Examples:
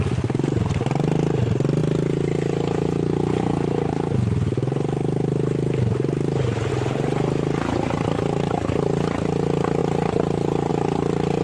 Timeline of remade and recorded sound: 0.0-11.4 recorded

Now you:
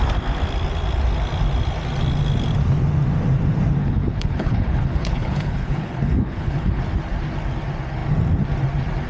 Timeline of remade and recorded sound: 0.0-3.8 recorded; 3.8-6.8 remade; 6.8-9.1 recorded

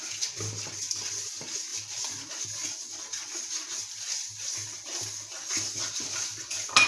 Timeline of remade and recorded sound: 0.0-6.9 recorded

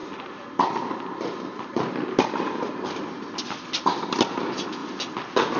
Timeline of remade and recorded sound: 0.0-5.6 recorded